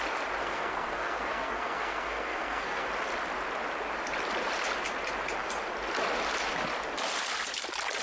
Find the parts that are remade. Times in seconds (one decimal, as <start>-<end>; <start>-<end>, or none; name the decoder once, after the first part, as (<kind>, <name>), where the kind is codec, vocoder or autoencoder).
0.4-2.9 (codec, SNAC)